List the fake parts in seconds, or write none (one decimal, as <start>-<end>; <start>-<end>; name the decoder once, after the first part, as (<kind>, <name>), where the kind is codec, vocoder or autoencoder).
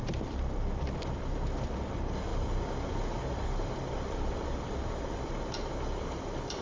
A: none